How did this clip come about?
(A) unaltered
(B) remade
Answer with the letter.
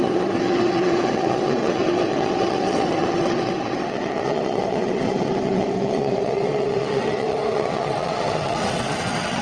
B